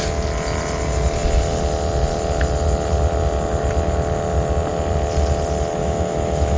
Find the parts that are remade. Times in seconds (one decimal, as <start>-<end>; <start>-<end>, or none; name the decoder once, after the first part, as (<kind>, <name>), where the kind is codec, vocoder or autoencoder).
5.8-6.6 (autoencoder, DAC-VAE)